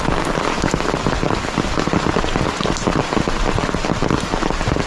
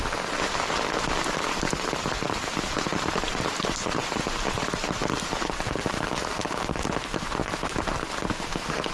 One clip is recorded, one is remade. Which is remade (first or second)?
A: second